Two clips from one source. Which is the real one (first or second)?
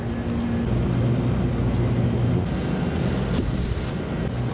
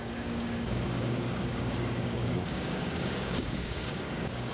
first